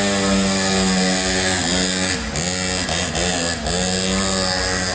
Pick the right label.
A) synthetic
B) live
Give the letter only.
B